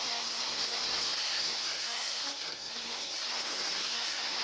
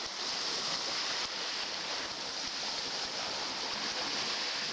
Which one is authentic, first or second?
second